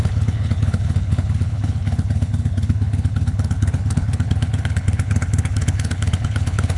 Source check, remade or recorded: remade